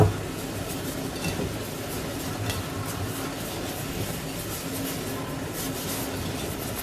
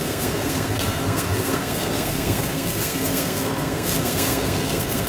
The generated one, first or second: second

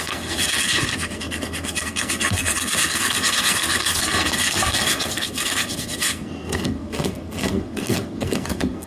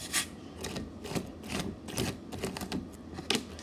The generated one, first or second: first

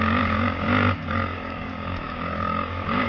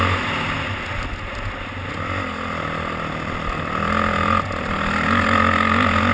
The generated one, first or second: first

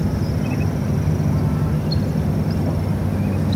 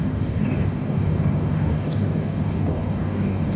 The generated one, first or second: second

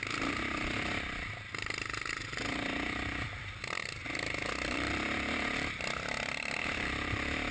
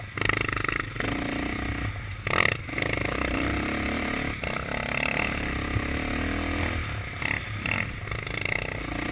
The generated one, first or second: first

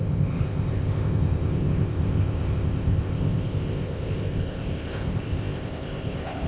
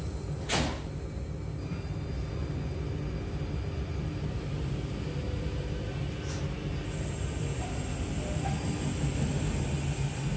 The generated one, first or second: first